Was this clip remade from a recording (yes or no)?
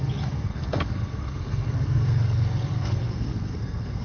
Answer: yes